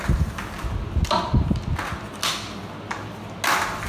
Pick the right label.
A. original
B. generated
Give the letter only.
A